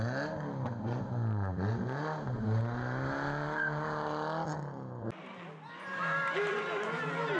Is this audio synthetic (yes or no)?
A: no